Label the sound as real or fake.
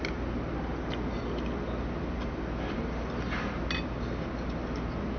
real